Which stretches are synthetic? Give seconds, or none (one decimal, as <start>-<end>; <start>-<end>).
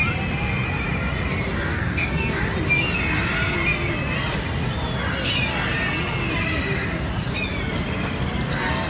1.7-2.4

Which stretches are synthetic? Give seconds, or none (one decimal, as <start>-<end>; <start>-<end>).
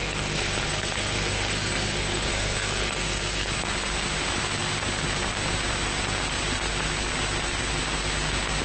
0.0-3.5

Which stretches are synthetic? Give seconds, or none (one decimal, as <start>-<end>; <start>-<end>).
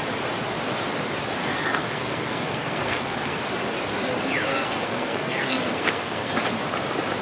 1.4-3.4; 4.5-6.3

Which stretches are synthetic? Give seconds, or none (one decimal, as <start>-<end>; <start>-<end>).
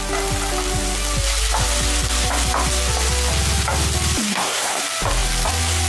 4.3-4.8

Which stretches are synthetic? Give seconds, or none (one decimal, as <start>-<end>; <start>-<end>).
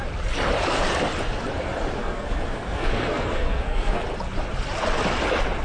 2.0-4.0